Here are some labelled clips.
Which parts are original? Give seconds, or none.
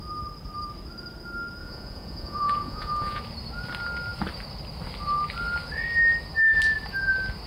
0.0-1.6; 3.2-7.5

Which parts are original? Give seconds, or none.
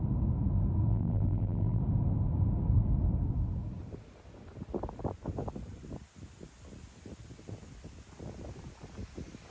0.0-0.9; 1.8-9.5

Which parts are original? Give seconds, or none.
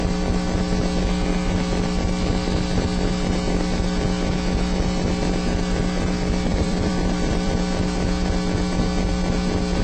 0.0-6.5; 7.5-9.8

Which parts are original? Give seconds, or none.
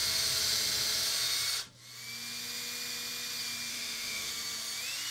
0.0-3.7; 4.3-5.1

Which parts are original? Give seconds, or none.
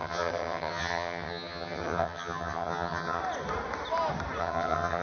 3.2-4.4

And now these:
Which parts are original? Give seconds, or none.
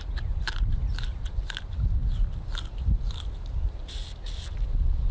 0.0-5.1